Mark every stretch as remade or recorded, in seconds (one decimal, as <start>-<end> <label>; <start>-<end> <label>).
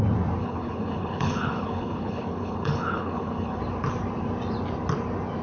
0.0-0.4 recorded; 0.4-3.6 remade; 3.6-5.4 recorded